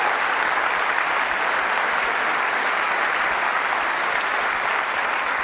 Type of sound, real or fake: real